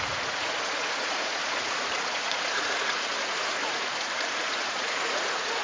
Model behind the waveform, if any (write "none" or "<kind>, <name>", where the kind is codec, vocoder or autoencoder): vocoder, Vocos